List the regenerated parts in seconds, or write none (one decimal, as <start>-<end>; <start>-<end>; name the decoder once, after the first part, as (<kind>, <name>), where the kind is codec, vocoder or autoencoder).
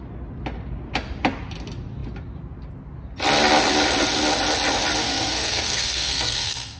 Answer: 5.0-6.8 (codec, SNAC)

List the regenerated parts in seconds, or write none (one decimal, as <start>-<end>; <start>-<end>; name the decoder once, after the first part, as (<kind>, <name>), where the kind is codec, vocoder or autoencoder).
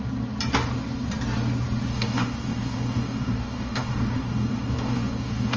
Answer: 1.9-5.6 (codec, DAC)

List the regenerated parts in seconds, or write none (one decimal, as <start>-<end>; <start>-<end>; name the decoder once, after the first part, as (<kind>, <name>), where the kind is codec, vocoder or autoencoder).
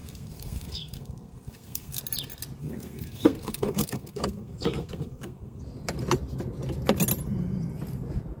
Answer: 0.0-2.0 (codec, SNAC); 2.6-5.6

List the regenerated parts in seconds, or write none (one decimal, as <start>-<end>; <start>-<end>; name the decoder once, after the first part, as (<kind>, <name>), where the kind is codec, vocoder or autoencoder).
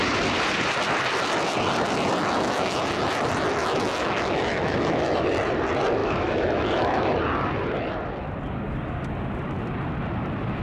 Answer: 2.2-2.8 (autoencoder, DAC-VAE); 3.6-5.2; 6.0-7.2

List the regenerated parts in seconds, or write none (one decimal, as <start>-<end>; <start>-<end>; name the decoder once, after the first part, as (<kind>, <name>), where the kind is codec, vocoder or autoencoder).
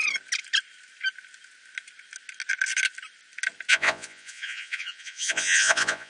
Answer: 3.7-6.1 (vocoder, Vocos)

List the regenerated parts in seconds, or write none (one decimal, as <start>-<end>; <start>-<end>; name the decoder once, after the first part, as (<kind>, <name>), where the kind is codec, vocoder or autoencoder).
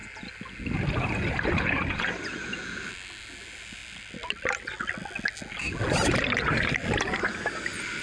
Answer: none